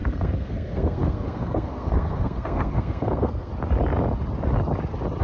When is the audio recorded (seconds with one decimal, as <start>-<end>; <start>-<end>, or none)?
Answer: 3.5-5.2